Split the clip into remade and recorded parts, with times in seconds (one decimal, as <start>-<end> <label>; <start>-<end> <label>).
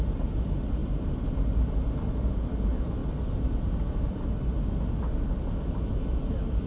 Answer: 0.0-6.7 recorded